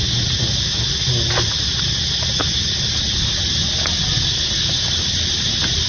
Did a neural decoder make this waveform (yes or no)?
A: no